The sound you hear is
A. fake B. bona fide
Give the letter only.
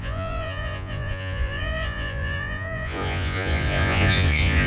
A